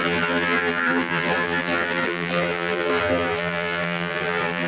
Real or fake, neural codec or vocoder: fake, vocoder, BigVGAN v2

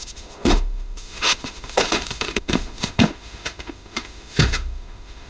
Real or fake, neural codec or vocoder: fake, autoencoder, DAC-VAE